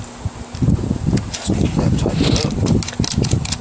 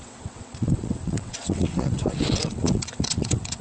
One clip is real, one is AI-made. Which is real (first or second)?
first